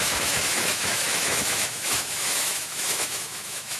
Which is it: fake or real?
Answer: fake